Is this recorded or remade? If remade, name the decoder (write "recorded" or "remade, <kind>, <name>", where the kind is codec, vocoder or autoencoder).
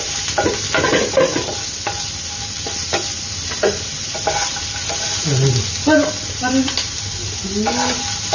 recorded